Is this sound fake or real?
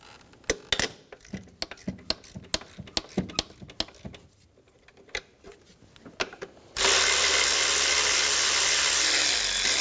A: real